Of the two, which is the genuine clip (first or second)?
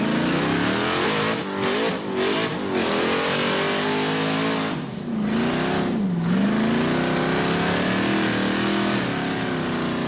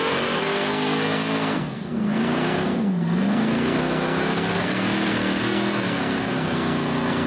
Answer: first